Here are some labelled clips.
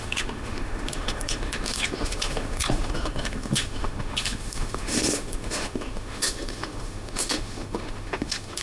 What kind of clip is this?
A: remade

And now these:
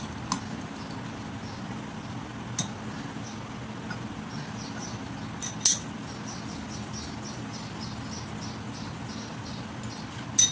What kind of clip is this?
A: recorded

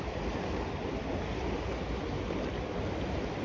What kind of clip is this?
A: recorded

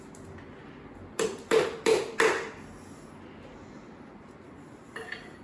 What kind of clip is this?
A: recorded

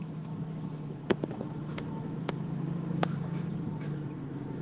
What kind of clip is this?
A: remade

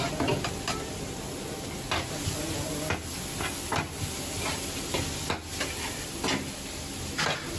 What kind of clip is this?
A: recorded